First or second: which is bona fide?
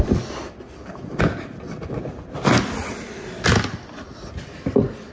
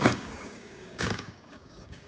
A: first